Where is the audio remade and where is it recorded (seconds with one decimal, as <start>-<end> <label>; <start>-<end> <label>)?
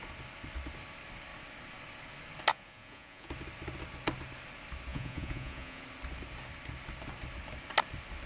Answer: 0.0-2.5 recorded; 2.5-3.3 remade; 3.3-4.9 recorded; 4.9-5.8 remade; 5.8-8.3 recorded